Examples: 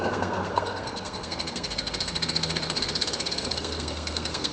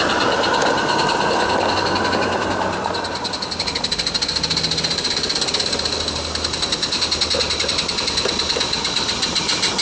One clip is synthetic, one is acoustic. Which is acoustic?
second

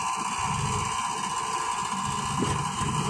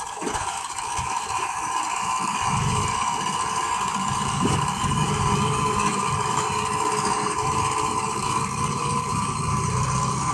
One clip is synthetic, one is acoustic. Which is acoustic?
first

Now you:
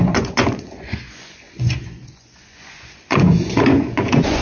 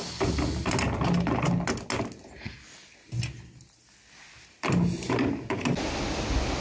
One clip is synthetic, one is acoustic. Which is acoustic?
second